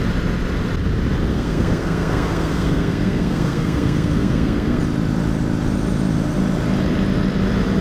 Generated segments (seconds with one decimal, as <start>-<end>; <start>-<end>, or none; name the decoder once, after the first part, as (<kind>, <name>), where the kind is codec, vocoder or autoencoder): 1.3-4.8 (codec, SNAC)